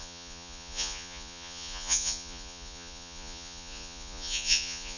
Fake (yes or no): yes